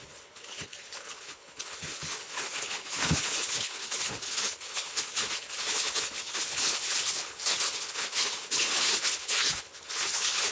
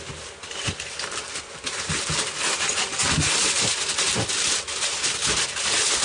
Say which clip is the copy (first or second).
first